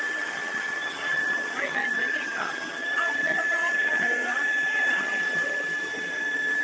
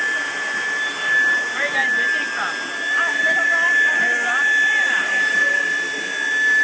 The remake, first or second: first